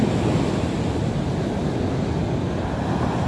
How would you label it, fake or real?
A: real